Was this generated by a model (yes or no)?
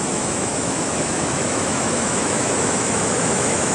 yes